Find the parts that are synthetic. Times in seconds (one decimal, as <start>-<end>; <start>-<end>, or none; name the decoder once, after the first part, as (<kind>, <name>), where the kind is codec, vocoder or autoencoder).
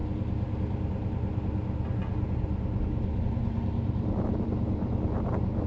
none